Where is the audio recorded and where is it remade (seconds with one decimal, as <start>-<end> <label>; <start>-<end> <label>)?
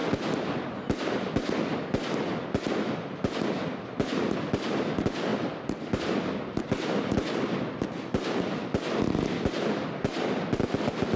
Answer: 0.0-5.3 recorded; 5.3-6.0 remade; 6.0-11.2 recorded